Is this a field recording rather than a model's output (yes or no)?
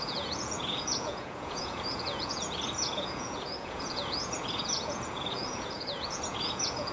no